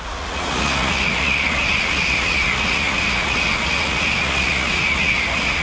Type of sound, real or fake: fake